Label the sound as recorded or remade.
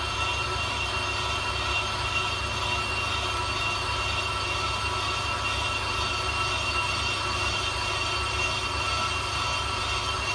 recorded